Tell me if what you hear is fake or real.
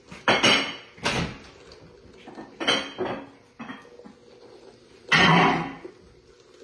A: real